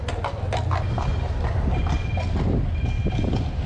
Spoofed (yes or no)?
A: no